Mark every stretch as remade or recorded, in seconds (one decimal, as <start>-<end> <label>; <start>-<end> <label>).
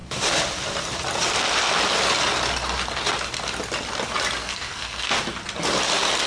0.0-4.4 recorded; 4.4-5.1 remade; 5.1-6.3 recorded